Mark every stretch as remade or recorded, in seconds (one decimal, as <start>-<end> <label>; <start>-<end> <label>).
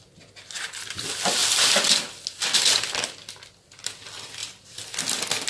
0.0-5.5 recorded